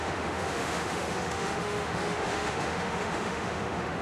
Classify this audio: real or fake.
fake